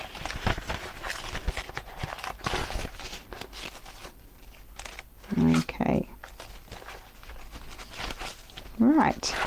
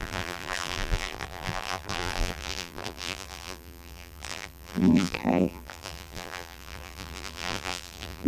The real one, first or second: first